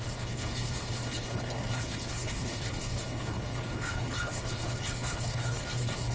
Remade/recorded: remade